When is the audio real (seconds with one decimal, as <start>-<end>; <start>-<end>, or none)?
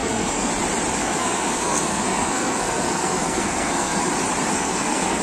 0.5-1.0; 4.1-4.5